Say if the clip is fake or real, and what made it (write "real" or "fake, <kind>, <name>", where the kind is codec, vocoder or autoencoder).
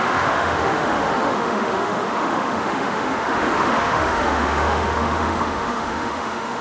fake, autoencoder, DAC-VAE